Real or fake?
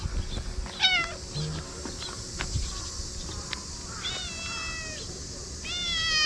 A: real